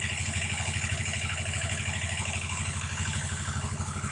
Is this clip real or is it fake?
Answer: fake